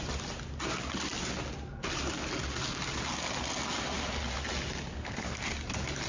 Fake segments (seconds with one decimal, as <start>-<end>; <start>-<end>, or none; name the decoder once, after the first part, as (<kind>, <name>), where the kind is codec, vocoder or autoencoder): 4.9-5.4 (codec, SNAC)